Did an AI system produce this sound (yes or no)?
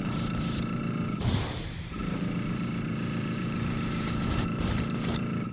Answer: yes